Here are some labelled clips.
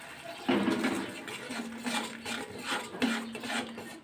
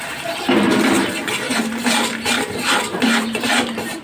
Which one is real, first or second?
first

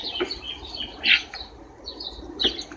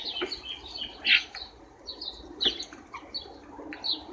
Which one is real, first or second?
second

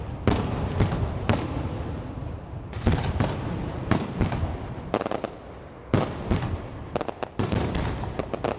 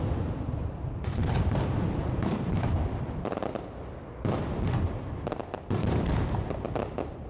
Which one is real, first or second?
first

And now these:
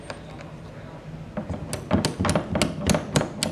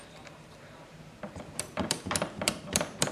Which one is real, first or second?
first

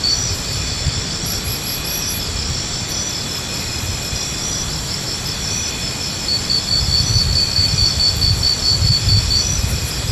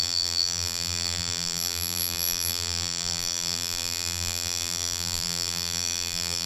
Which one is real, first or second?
first